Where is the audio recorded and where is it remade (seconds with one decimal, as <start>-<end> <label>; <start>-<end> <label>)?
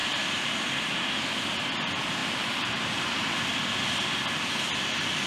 0.0-2.2 recorded; 2.2-3.4 remade; 3.4-5.3 recorded